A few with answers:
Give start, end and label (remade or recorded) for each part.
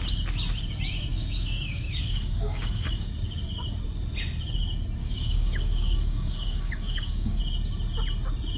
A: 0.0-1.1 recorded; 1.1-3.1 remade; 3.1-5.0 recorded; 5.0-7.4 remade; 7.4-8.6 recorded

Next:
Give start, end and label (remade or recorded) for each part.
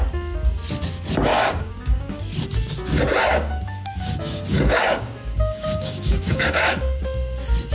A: 0.0-1.3 recorded; 1.3-2.2 remade; 2.2-3.3 recorded; 3.3-7.0 remade; 7.0-7.7 recorded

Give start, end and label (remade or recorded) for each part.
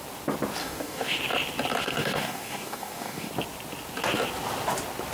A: 0.0-0.6 recorded; 0.6-1.2 remade; 1.2-1.8 recorded; 1.8-3.3 remade; 3.3-5.1 recorded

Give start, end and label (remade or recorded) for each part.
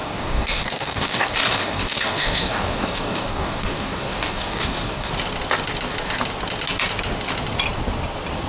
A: 0.0-5.1 remade; 5.1-8.5 recorded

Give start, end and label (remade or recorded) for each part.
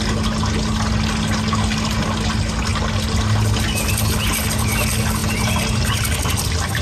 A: 0.0-6.8 recorded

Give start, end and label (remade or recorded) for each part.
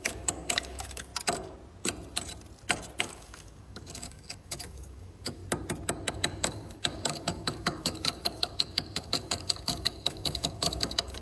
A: 0.0-1.1 remade; 1.1-3.0 recorded; 3.0-5.4 remade; 5.4-6.1 recorded; 6.1-11.2 remade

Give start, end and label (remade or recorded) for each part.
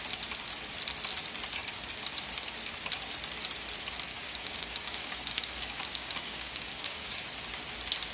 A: 0.0-4.1 recorded; 4.1-7.1 remade; 7.1-8.1 recorded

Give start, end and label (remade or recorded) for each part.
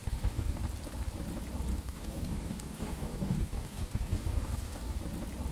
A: 0.0-0.6 remade; 0.6-1.7 recorded; 1.7-5.0 remade; 5.0-5.5 recorded